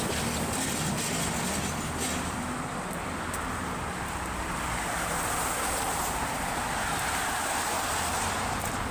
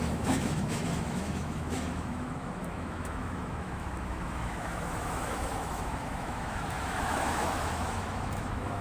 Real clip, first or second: first